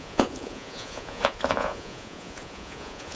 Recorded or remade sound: remade